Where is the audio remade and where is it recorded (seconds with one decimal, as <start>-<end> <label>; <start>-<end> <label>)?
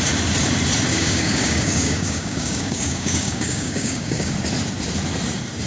0.0-0.9 recorded; 0.9-4.3 remade; 4.3-5.7 recorded